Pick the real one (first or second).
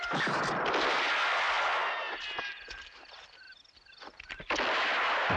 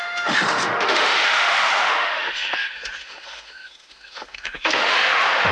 first